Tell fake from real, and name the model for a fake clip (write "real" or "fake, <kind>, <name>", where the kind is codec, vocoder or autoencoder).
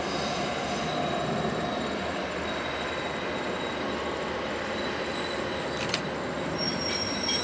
real